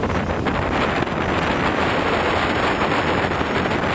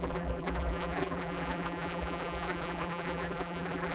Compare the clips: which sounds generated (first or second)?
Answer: second